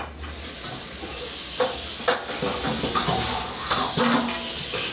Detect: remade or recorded recorded